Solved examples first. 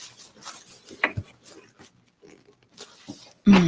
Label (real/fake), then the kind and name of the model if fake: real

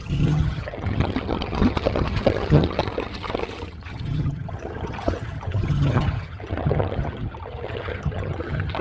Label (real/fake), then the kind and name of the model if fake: fake, vocoder, HiFi-GAN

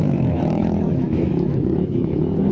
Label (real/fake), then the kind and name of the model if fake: fake, autoencoder, DAC-VAE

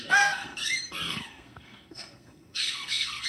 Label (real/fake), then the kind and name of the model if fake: fake, codec, SNAC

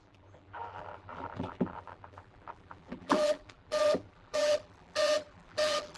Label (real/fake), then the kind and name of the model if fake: fake, vocoder, BigVGAN v2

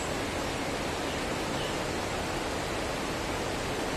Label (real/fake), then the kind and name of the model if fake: real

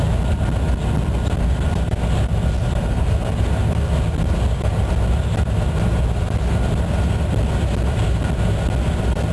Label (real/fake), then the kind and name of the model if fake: real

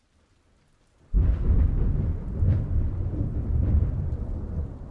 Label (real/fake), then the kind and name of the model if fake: real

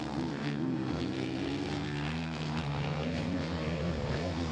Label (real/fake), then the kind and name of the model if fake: fake, codec, SNAC